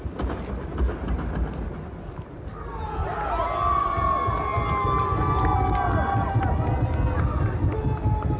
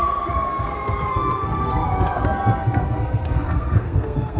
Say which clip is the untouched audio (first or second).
first